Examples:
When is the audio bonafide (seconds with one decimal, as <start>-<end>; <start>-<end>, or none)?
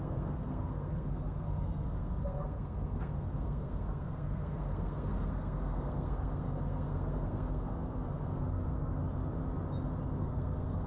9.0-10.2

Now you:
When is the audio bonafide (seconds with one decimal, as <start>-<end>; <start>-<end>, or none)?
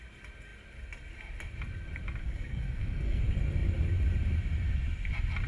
0.0-2.2; 3.2-5.5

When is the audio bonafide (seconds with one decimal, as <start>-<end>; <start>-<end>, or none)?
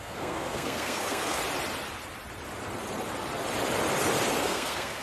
1.4-4.4